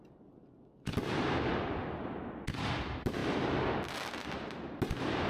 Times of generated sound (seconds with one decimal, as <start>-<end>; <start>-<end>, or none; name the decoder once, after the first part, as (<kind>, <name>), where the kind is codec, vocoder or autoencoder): none